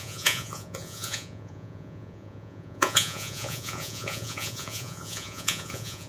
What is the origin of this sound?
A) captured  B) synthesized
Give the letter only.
B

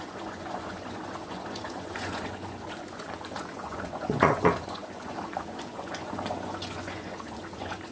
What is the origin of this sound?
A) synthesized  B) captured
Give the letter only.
A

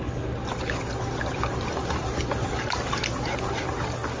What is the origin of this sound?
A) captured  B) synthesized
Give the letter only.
A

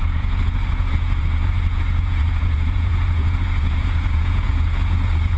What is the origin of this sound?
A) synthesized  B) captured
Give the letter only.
A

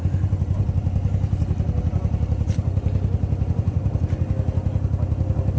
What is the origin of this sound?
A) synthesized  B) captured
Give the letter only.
B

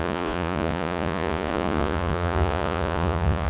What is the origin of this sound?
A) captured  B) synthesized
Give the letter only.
B